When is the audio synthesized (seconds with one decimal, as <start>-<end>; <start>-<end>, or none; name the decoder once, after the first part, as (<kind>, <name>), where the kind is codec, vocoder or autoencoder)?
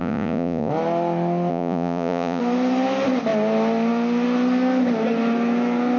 0.0-0.7 (vocoder, Vocos); 1.5-2.4